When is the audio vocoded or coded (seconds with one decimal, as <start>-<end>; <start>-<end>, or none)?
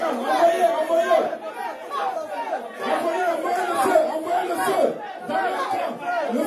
none